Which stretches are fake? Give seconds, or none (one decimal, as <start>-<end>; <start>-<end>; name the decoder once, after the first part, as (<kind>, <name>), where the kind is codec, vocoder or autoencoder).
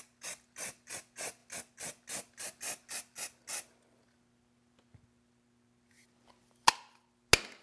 none